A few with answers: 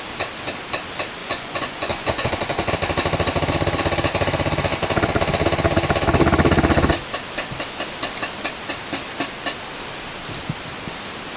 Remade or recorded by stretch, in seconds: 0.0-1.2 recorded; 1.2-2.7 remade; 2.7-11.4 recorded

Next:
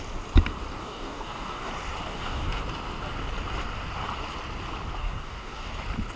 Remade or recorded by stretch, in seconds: 0.0-0.8 recorded; 0.8-1.7 remade; 1.7-2.1 recorded; 2.1-2.6 remade; 2.6-5.0 recorded; 5.0-5.7 remade; 5.7-6.2 recorded